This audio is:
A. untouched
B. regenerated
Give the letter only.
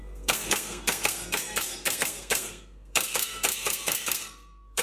B